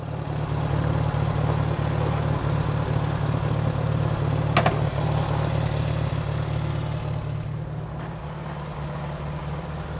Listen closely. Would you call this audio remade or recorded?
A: recorded